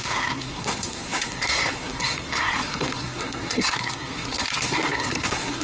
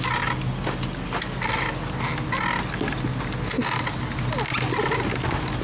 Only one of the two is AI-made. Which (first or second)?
first